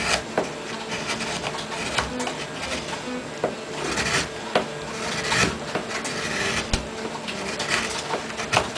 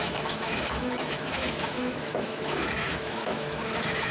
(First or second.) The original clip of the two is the first